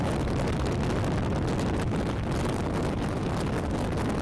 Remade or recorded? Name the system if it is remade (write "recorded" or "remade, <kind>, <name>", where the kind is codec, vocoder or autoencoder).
recorded